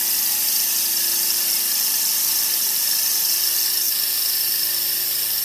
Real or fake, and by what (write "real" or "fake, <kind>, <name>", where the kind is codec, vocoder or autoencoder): real